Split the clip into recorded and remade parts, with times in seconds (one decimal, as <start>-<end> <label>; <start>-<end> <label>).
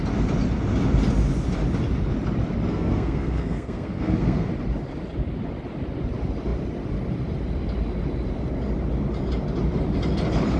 0.0-2.7 recorded; 2.7-4.5 remade; 4.5-10.6 recorded